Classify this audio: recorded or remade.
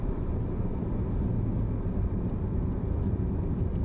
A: remade